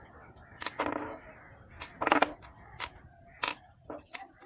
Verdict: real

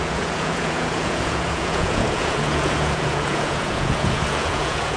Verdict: fake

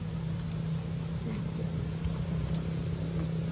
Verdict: real